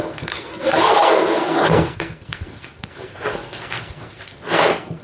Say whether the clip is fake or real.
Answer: fake